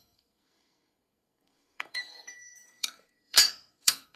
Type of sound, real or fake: fake